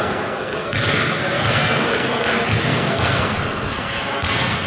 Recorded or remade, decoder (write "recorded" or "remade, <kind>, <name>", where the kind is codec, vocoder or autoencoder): remade, codec, SNAC